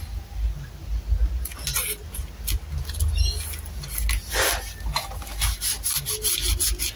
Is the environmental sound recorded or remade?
recorded